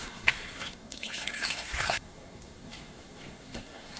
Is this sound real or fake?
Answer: fake